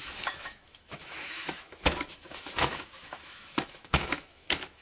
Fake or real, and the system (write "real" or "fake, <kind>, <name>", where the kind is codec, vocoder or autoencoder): fake, autoencoder, DAC-VAE